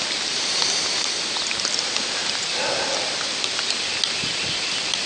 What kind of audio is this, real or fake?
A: real